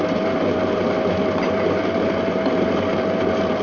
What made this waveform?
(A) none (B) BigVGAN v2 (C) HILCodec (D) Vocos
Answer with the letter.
A